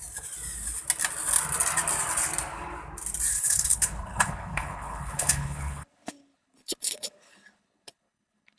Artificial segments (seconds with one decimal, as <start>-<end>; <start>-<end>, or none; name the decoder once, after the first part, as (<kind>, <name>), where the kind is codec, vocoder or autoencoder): 3.3-8.6 (codec, HILCodec)